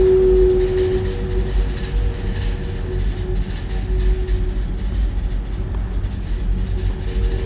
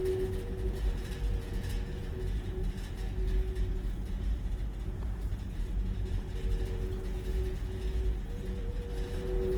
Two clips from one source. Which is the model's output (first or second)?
second